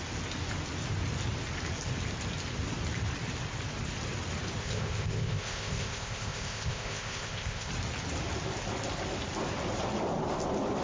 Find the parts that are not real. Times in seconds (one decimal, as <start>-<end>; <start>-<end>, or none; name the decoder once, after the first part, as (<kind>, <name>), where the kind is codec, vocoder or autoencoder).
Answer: 4.6-7.7 (codec, ZipCodec)